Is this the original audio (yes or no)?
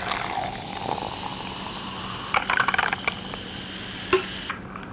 yes